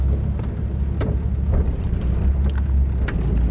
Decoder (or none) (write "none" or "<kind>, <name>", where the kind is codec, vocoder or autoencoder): none